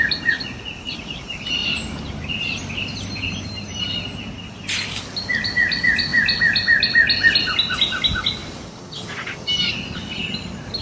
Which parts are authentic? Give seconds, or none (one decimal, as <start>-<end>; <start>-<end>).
0.0-1.6; 3.9-10.8